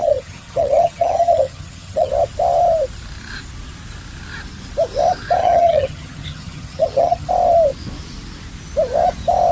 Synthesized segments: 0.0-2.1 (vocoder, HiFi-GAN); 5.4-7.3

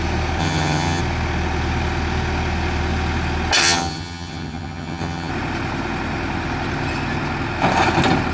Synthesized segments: 0.4-1.0 (vocoder, HiFi-GAN); 3.6-5.3

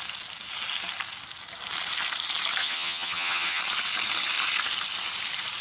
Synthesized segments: 2.6-3.6 (vocoder, HiFi-GAN)

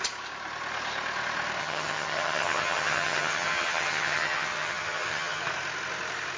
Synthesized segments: 1.6-5.4 (vocoder, HiFi-GAN)